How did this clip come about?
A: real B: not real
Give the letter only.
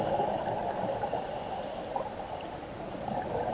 A